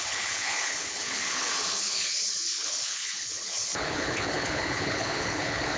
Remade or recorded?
remade